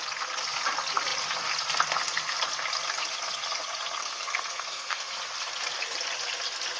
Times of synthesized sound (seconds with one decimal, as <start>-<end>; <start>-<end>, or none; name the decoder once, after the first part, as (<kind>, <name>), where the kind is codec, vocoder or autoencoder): 4.0-5.1 (codec, SNAC)